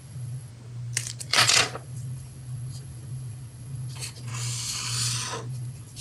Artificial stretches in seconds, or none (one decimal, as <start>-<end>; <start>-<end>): 0.0-0.5; 1.2-4.3; 5.5-6.0